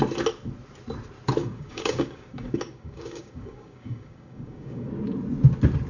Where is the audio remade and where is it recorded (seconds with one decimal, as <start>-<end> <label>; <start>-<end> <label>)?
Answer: 0.0-1.4 recorded; 1.4-4.9 remade; 4.9-5.9 recorded